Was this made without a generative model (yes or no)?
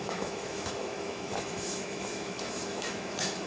no